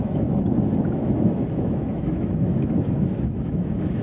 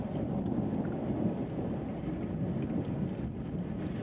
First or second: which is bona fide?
second